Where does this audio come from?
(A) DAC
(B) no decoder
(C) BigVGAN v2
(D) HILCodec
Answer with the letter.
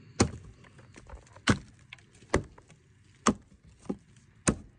B